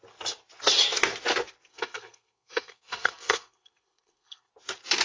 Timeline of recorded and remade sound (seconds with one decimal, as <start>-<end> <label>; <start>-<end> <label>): 0.0-1.7 recorded; 1.7-4.5 remade; 4.5-5.0 recorded